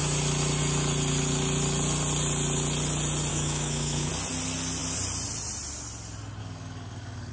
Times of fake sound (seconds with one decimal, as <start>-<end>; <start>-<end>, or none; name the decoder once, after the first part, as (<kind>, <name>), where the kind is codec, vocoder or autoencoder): 3.3-4.1 (codec, DAC); 6.4-7.3